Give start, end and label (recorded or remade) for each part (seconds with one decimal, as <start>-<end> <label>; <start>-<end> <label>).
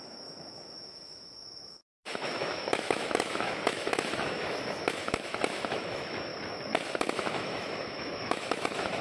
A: 0.0-6.3 remade; 6.3-7.1 recorded; 7.1-9.0 remade